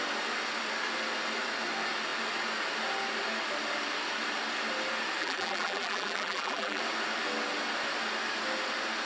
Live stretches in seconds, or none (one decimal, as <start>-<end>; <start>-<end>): 0.0-5.2; 6.8-9.1

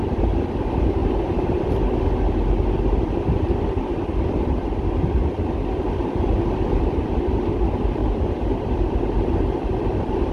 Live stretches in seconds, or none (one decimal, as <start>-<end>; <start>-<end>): 0.0-1.0; 1.6-8.0; 9.1-10.3

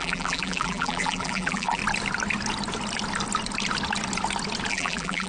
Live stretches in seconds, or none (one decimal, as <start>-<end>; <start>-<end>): 1.8-4.7

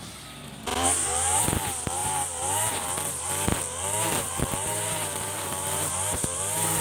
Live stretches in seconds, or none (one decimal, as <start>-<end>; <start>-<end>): 0.0-0.7; 1.4-2.0; 2.7-3.5

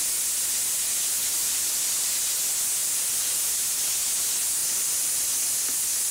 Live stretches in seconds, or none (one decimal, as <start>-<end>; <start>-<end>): 0.0-1.4; 2.3-2.8; 3.4-4.6; 5.2-6.1

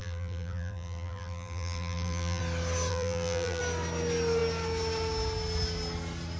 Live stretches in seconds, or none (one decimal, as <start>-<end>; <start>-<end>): 2.4-2.9; 3.6-6.4

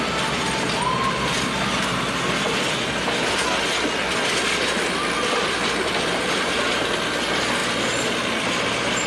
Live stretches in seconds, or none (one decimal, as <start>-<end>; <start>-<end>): 0.0-9.1

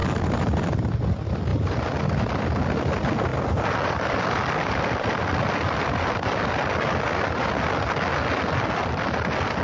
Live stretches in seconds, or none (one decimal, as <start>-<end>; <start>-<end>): 0.8-1.5; 2.8-3.3; 7.4-9.6